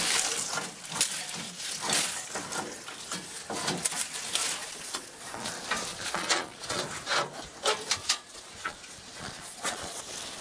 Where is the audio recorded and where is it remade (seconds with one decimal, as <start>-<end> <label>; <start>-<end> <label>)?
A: 0.0-4.6 recorded; 4.6-5.5 remade; 5.5-5.9 recorded; 5.9-6.8 remade; 6.8-8.0 recorded; 8.0-10.0 remade; 10.0-10.4 recorded